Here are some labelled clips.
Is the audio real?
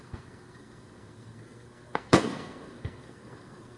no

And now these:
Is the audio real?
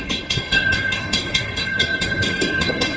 no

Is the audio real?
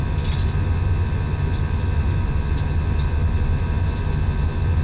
yes